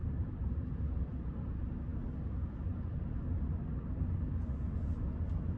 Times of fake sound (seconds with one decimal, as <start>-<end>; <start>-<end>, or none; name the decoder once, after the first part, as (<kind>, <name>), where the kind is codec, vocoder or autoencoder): 0.0-0.8 (vocoder, BigVGAN v2)